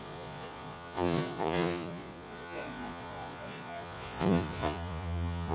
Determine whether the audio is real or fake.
fake